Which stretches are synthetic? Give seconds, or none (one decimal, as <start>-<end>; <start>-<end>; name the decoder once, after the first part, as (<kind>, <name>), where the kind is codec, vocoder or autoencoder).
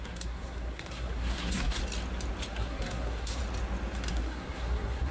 0.0-1.8 (codec, SNAC); 2.5-3.4; 4.1-5.1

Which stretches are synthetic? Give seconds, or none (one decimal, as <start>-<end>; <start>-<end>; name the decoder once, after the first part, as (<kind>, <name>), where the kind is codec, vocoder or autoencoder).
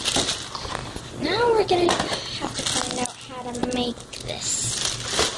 none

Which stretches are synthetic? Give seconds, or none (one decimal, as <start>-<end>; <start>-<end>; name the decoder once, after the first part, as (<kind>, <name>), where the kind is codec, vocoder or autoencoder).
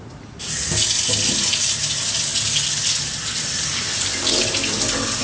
none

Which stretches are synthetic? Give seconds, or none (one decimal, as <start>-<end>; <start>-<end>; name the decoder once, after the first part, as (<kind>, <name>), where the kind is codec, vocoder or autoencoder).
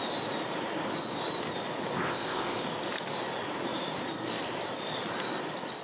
1.9-2.7 (codec, ZipCodec)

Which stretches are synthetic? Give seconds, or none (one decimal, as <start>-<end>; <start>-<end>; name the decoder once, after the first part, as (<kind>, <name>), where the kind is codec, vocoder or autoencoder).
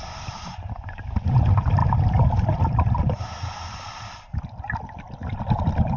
none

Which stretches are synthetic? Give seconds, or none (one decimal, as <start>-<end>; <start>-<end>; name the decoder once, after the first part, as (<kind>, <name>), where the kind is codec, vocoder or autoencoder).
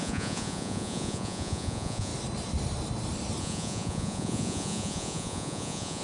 0.0-2.1 (vocoder, Vocos); 3.4-6.0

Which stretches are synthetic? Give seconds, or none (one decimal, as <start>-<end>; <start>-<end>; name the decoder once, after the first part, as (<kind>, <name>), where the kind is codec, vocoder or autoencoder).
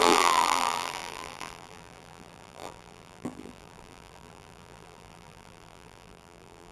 0.0-6.7 (vocoder, BigVGAN v2)